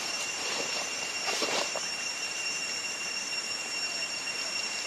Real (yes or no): no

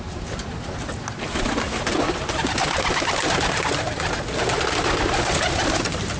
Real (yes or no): yes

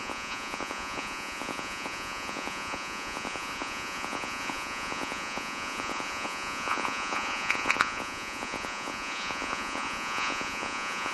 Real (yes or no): no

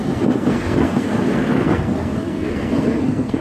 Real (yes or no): no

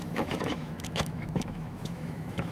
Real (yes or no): no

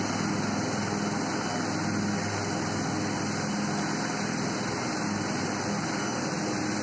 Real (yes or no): yes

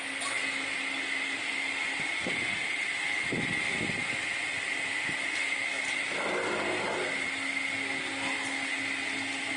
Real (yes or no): yes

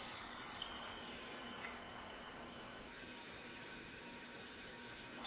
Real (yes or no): no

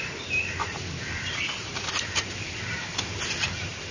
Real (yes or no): no